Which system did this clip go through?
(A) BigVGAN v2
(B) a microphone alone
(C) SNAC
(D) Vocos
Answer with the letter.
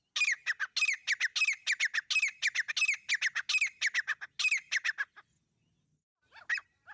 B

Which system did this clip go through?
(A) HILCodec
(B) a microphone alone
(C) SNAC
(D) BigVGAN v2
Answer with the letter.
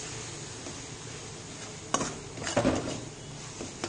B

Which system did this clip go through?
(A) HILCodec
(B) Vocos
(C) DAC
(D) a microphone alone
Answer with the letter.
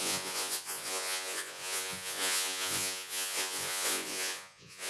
B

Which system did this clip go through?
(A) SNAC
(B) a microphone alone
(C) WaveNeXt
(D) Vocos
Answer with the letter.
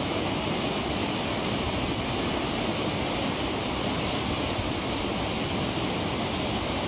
B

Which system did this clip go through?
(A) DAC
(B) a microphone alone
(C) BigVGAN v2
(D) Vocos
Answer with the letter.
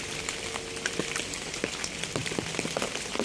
B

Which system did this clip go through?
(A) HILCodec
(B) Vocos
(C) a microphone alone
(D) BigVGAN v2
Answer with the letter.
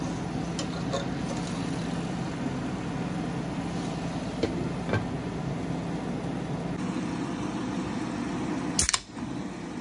C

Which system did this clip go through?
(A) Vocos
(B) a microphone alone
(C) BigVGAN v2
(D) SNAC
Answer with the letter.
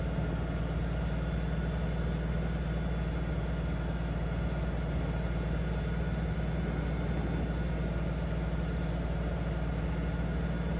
B